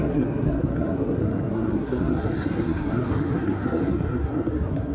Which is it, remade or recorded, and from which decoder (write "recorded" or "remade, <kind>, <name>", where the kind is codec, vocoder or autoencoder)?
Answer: remade, codec, SNAC